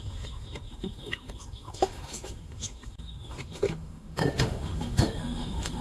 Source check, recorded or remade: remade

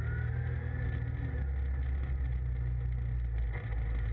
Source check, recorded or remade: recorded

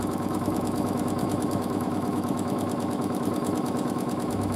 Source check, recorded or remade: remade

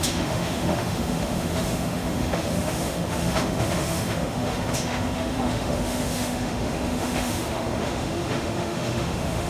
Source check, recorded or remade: remade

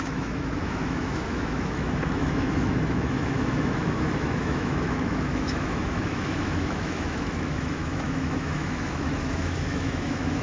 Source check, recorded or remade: remade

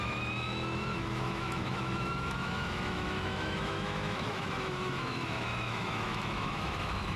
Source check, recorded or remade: remade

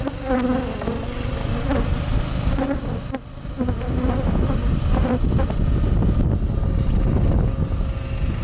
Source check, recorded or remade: recorded